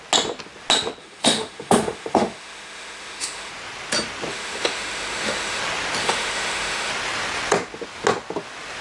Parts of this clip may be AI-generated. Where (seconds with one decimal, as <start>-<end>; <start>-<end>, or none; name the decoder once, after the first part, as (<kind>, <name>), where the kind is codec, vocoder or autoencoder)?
1.0-3.5 (autoencoder, DAC-VAE); 4.3-5.6; 6.0-6.9